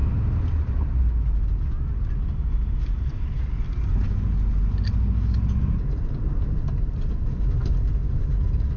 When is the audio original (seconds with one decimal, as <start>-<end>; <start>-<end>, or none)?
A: 0.0-8.8